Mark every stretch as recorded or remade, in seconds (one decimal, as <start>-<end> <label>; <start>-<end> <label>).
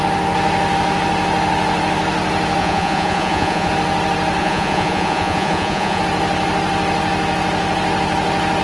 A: 0.0-2.6 recorded; 2.6-3.7 remade; 3.7-4.4 recorded; 4.4-6.0 remade; 6.0-8.6 recorded